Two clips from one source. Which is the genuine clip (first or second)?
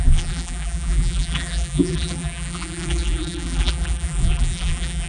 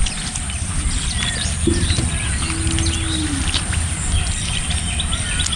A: second